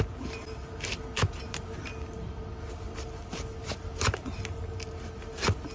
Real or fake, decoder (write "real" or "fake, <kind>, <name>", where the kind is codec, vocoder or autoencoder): real